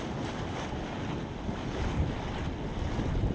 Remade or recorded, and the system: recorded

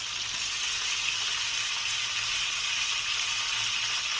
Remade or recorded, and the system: recorded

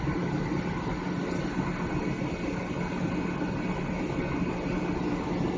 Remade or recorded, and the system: recorded